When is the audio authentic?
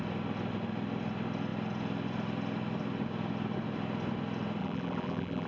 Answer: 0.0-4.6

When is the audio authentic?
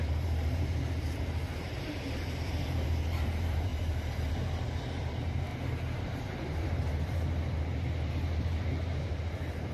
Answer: none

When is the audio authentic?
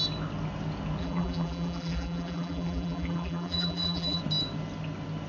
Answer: 0.0-1.0; 4.2-5.3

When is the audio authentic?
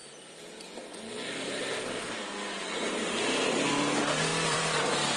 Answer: 0.0-4.3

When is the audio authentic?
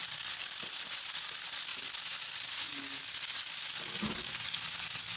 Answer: 0.0-5.2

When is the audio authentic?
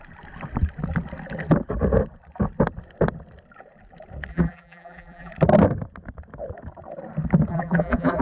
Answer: 0.0-4.3; 5.3-7.5